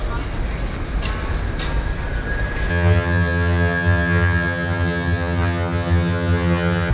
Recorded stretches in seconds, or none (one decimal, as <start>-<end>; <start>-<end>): 0.0-2.7